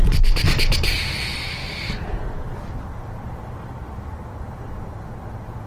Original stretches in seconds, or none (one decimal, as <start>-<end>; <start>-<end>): 0.0-5.7